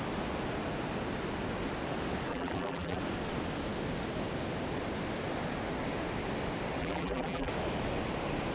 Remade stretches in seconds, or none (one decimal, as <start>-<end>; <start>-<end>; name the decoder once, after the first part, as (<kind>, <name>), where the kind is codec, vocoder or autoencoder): 2.3-3.0 (vocoder, BigVGAN v2); 6.8-7.5